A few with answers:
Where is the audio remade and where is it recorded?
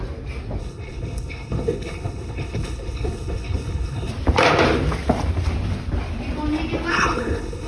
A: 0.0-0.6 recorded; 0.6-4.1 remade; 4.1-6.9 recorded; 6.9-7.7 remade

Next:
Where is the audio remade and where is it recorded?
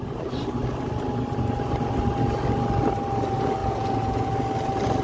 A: 0.0-3.6 recorded; 3.6-4.3 remade; 4.3-5.0 recorded